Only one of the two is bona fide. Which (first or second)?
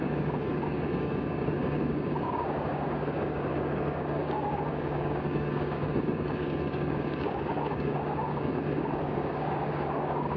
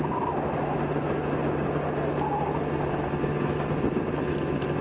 second